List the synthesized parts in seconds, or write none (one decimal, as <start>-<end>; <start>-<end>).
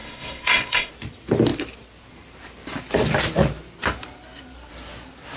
0.0-0.9